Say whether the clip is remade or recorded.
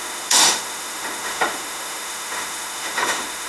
remade